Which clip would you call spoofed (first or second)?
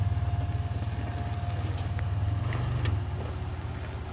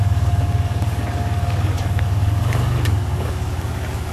second